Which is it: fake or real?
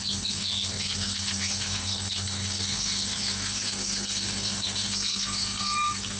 fake